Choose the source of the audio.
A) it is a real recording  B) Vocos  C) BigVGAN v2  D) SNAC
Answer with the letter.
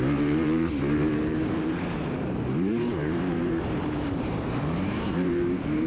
C